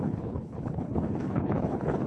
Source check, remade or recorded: remade